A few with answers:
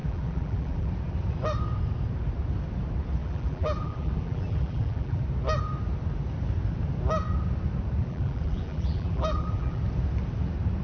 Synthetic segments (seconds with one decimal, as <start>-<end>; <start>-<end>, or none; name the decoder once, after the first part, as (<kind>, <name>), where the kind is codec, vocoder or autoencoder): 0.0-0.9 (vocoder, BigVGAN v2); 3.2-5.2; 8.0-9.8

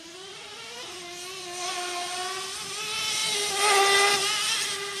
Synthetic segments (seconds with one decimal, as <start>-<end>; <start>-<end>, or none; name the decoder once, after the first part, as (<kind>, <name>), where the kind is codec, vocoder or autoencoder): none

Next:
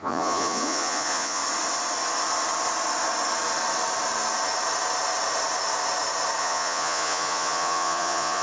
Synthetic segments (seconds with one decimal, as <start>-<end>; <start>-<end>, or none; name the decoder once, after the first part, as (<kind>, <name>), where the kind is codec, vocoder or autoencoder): 0.0-1.4 (vocoder, Vocos); 6.4-8.4